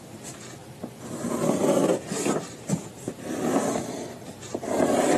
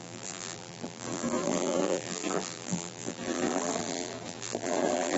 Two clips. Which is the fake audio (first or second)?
second